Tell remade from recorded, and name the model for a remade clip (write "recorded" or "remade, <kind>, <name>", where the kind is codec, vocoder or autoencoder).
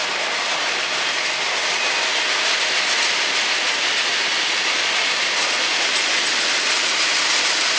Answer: recorded